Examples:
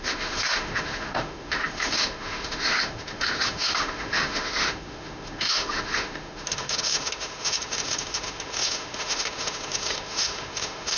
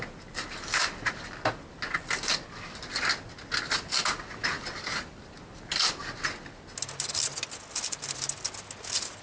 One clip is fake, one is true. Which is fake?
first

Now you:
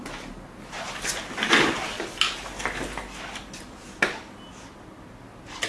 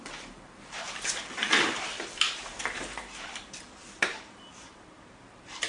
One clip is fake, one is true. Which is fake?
second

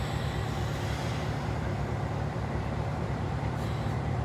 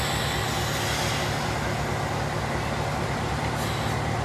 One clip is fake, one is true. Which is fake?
first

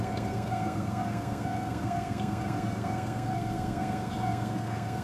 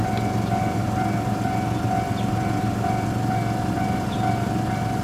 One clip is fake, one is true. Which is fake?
first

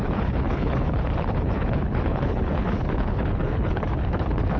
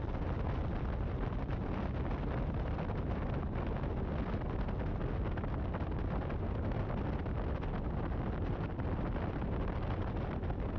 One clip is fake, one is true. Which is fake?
first